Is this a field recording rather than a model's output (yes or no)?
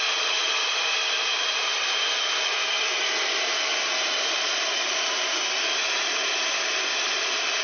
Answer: yes